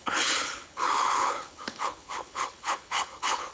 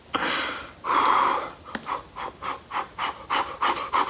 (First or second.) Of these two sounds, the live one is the second